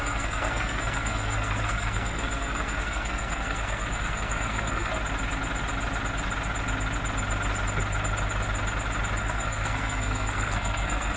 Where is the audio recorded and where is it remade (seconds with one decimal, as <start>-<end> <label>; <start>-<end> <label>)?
0.0-4.9 remade; 4.9-9.2 recorded; 9.2-11.2 remade